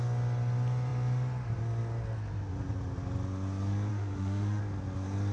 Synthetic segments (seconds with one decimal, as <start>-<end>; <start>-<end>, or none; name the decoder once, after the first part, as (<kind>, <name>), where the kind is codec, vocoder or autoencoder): 3.9-4.6 (autoencoder, DAC-VAE)